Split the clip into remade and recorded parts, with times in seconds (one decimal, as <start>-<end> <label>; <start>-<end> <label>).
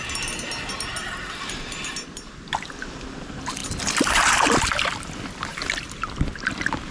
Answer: 0.0-6.9 recorded